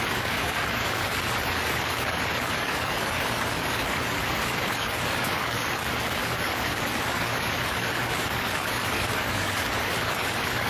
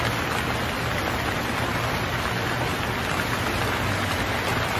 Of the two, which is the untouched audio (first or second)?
second